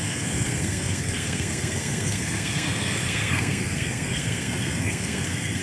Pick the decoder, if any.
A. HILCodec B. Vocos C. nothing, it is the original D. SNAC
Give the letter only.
D